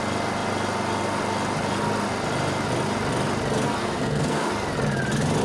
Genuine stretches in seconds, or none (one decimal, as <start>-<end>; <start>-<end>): 0.0-3.8; 4.5-5.4